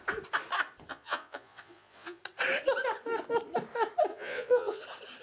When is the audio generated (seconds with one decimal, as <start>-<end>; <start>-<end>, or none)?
0.9-2.2; 4.1-4.8